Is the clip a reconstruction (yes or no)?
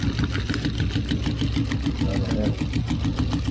no